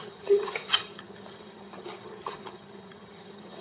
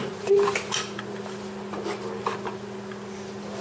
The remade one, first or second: first